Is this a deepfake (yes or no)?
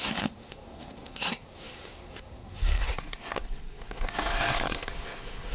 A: yes